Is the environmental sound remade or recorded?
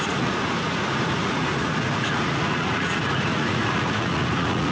remade